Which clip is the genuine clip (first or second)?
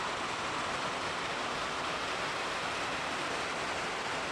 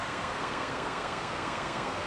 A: first